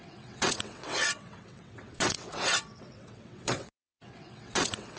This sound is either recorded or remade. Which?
remade